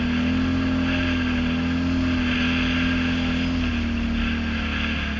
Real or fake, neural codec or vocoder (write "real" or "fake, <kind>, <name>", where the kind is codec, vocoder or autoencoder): real